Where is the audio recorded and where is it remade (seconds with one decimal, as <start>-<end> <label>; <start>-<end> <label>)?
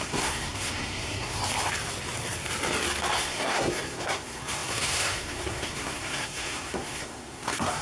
0.0-1.4 remade; 1.4-3.2 recorded; 3.2-7.8 remade